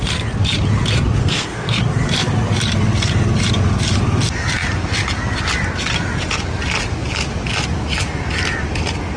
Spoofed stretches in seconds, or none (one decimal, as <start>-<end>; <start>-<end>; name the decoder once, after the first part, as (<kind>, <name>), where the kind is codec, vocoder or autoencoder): 1.2-1.8 (codec, SNAC)